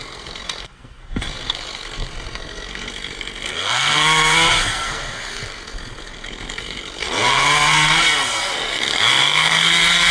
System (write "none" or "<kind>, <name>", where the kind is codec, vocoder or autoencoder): codec, SNAC